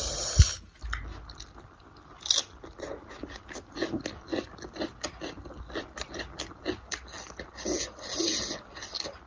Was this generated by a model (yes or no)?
no